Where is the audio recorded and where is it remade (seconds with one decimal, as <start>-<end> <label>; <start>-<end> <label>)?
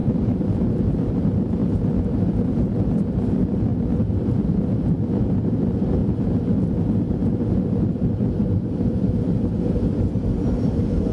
0.0-1.1 remade; 1.1-11.1 recorded